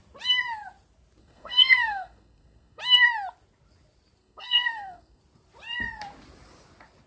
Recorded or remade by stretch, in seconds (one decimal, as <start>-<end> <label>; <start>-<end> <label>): 0.0-1.2 recorded; 1.2-2.8 remade; 2.8-4.2 recorded; 4.2-5.2 remade; 5.2-7.1 recorded